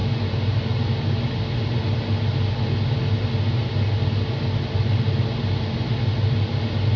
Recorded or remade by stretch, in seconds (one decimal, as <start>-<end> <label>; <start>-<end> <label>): 0.0-7.0 recorded